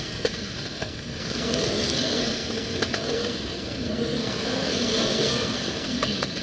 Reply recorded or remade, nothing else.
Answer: remade